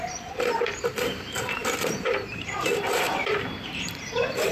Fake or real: fake